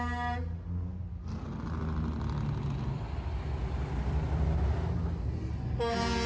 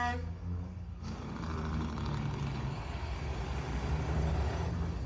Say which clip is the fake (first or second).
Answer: second